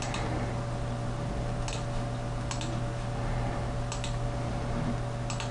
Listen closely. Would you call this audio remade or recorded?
recorded